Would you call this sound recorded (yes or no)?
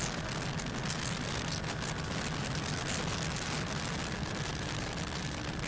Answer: yes